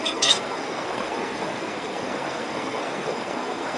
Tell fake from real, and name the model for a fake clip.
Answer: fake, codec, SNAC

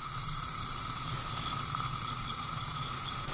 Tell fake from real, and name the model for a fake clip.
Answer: real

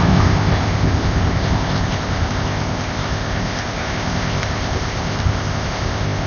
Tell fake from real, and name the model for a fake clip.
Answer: fake, codec, ZipCodec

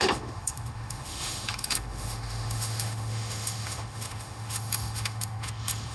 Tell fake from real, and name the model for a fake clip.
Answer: fake, autoencoder, DAC-VAE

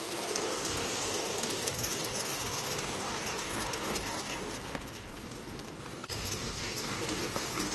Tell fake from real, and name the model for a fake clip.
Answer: fake, codec, DAC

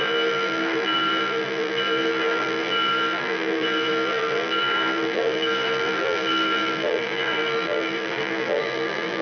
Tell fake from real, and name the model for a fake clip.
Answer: fake, vocoder, BigVGAN v2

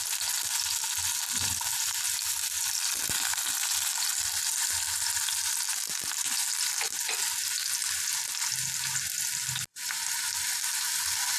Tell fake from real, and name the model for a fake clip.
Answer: real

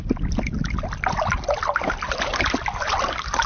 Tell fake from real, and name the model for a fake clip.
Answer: real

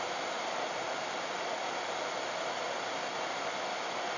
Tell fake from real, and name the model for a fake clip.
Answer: real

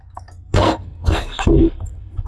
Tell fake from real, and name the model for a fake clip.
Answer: fake, codec, SNAC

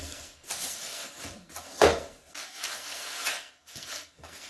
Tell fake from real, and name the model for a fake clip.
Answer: fake, codec, SNAC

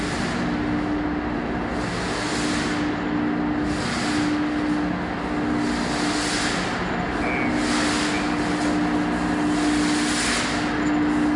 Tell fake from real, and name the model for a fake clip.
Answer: real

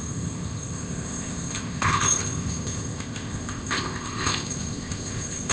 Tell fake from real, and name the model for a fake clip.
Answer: fake, codec, ZipCodec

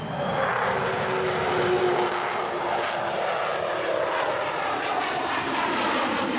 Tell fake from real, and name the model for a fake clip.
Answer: real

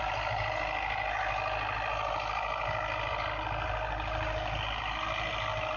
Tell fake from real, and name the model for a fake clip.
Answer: real